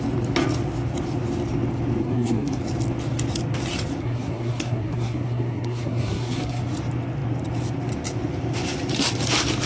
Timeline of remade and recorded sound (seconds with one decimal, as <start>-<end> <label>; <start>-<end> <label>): 0.0-2.0 recorded; 2.0-2.6 remade; 2.6-4.0 recorded; 4.0-6.6 remade; 6.6-9.7 recorded